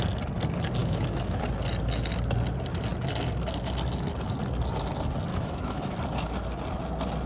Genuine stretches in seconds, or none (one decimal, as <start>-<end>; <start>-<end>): 0.0-0.8; 1.4-5.3; 5.9-7.3